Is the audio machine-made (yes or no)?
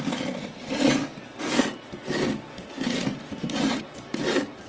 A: no